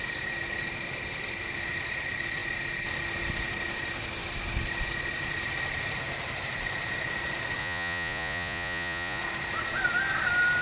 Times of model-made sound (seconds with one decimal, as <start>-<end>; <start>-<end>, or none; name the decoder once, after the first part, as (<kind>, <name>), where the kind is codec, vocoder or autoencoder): 7.6-9.2 (vocoder, Vocos)